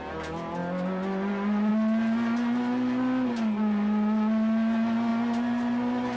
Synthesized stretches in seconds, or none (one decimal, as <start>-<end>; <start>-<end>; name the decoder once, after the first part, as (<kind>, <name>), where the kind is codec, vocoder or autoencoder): none